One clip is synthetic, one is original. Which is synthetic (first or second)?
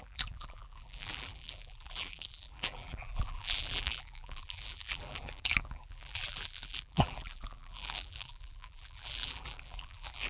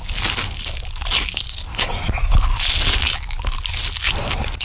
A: first